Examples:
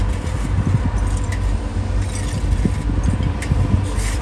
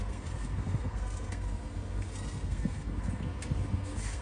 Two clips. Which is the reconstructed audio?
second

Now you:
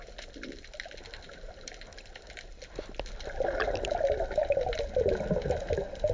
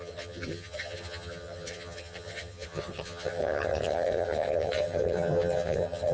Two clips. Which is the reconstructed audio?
second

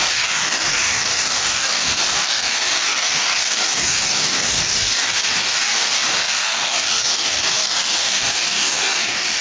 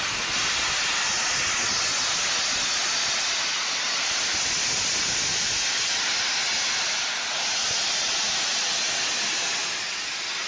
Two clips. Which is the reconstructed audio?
first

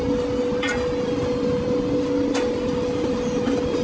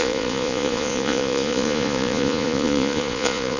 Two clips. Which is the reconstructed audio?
second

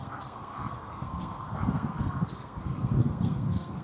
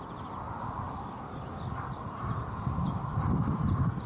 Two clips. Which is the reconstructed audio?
first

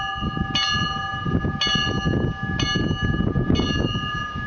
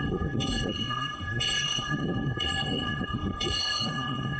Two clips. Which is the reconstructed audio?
second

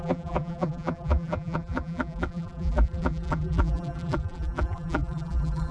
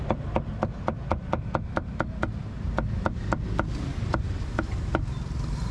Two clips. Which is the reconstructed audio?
first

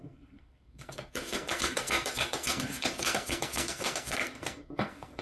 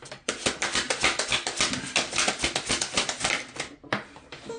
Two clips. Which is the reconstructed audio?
first